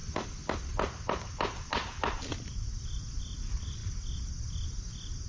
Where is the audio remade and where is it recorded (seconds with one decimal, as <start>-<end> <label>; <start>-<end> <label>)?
0.0-5.3 recorded